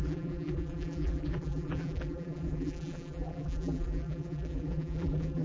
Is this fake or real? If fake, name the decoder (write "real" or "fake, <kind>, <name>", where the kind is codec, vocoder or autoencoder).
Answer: fake, vocoder, BigVGAN v2